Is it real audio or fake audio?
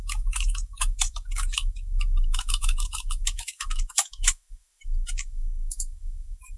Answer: fake